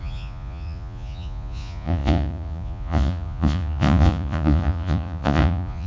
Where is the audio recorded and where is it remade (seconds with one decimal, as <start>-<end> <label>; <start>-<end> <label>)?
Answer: 0.0-5.9 remade